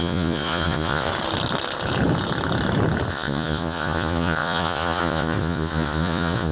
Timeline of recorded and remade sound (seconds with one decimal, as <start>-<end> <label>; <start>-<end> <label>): 0.0-1.1 remade; 1.1-3.1 recorded; 3.1-6.5 remade

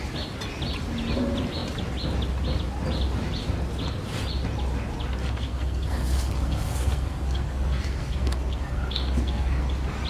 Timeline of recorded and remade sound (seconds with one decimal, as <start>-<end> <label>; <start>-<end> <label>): 0.0-5.2 recorded; 5.2-9.7 remade; 9.7-10.1 recorded

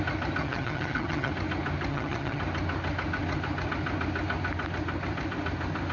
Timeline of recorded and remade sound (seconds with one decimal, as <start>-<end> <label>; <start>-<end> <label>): 0.0-0.4 recorded; 0.4-1.3 remade; 1.3-1.9 recorded; 1.9-2.4 remade; 2.4-5.9 recorded

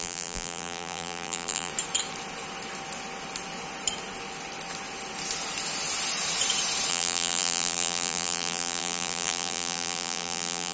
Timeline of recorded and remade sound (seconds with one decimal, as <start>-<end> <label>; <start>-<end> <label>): 0.0-1.7 remade; 1.7-6.9 recorded; 6.9-10.7 remade

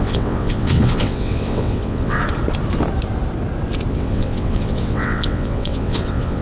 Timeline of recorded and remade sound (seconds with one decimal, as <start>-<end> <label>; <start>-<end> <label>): 0.0-2.2 remade; 2.2-3.9 recorded; 3.9-6.4 remade

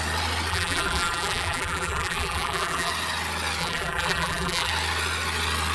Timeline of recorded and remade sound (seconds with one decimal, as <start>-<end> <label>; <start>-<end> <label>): 0.0-0.5 recorded; 0.5-2.9 remade; 2.9-3.6 recorded; 3.6-4.7 remade; 4.7-5.7 recorded